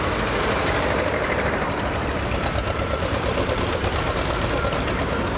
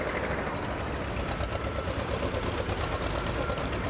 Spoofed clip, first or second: first